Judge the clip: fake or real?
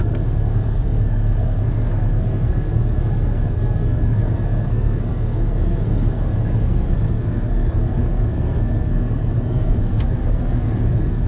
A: fake